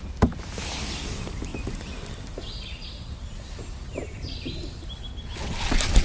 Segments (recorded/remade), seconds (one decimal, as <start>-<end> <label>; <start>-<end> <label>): 0.0-1.5 recorded; 1.5-4.8 remade; 4.8-6.0 recorded